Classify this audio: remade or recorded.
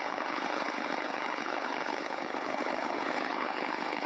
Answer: remade